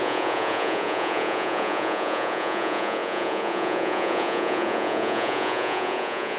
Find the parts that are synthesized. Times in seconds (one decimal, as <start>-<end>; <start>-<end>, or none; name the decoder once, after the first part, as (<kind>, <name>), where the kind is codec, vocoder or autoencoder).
0.0-6.4 (vocoder, Vocos)